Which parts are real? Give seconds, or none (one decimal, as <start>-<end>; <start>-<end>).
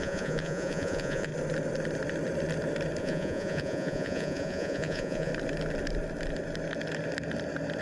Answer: 1.3-3.0; 5.3-7.8